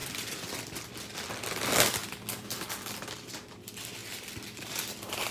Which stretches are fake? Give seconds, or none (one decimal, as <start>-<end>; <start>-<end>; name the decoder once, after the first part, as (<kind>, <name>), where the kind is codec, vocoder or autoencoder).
0.0-0.6 (vocoder, BigVGAN v2); 4.0-5.3